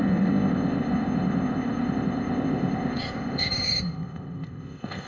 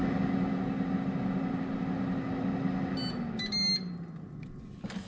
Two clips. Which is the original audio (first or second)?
second